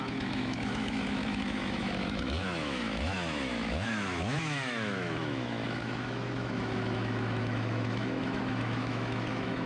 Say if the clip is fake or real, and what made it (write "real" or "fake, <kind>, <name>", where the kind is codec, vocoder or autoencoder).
fake, autoencoder, DAC-VAE